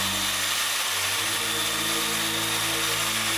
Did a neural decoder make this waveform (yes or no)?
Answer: no